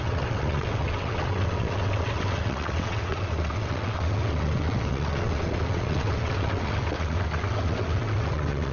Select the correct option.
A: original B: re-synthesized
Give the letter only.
B